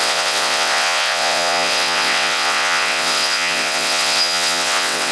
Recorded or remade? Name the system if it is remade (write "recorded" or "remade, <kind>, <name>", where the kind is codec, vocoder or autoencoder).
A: remade, vocoder, WaveNeXt